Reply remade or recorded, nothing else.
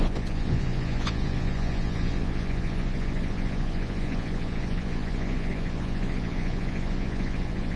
remade